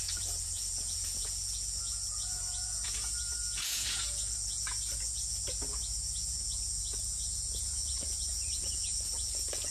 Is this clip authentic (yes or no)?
no